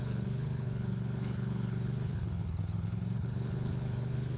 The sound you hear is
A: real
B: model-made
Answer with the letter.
B